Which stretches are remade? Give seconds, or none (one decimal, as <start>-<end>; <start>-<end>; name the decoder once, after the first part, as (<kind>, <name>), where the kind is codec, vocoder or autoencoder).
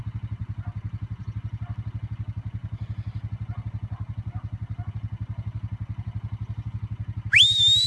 none